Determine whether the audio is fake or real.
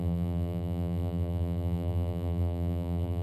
fake